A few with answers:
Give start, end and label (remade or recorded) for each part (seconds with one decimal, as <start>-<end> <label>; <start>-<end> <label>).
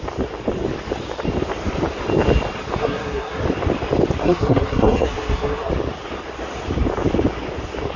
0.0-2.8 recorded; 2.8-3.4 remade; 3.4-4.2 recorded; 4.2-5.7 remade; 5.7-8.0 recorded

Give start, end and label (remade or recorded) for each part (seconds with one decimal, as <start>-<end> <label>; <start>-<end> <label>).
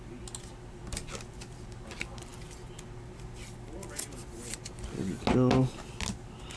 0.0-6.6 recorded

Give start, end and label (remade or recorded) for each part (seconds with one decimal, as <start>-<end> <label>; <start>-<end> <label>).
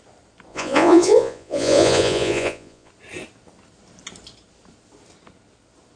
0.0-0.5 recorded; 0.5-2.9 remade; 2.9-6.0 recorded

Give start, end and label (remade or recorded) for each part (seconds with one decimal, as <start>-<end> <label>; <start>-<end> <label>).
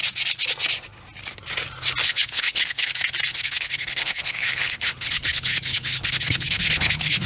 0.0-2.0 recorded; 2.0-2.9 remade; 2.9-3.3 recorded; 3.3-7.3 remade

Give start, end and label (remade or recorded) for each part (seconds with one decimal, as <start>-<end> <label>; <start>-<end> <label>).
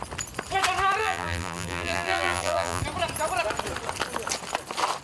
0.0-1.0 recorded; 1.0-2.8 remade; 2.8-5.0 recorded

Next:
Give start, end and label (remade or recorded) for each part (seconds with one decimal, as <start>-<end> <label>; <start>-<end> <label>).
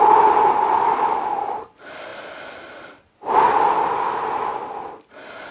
0.0-5.5 recorded